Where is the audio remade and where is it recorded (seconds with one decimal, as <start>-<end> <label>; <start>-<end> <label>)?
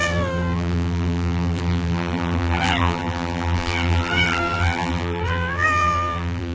0.0-6.5 remade